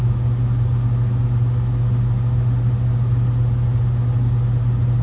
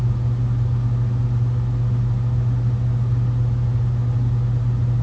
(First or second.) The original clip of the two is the second